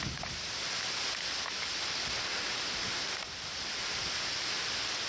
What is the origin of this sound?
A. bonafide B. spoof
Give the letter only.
A